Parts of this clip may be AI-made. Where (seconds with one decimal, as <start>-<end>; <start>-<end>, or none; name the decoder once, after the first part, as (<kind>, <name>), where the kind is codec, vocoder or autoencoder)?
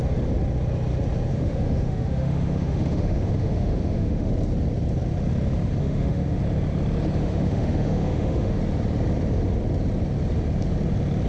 1.3-4.3 (autoencoder, DAC-VAE); 5.8-6.4; 7.2-8.6